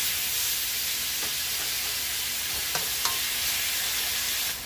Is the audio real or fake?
real